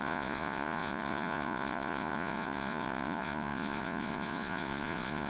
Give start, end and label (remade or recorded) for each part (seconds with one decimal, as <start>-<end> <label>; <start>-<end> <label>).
0.0-5.3 remade